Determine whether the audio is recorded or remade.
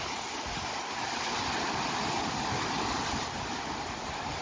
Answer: recorded